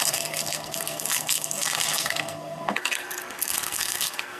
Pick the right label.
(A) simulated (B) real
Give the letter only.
A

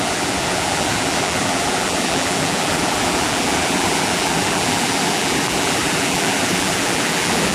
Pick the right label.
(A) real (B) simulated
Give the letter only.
B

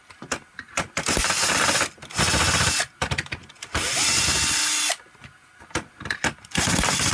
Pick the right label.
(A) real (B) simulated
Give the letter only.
A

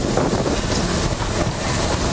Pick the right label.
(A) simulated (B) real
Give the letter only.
B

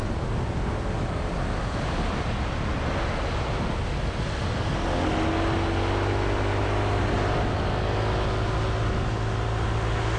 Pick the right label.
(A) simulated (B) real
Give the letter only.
B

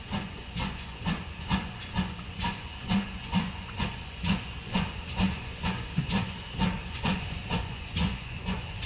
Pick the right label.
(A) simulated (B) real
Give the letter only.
A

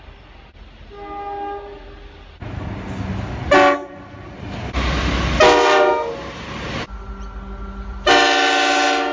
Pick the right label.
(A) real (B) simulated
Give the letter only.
A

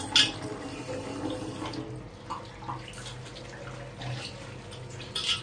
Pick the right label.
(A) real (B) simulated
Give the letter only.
A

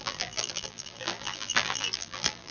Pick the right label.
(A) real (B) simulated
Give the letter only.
B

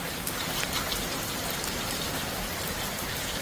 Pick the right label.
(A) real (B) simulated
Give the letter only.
A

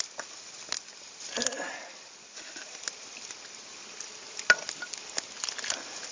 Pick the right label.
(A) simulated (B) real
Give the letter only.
B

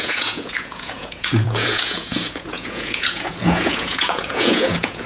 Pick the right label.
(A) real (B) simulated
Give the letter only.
B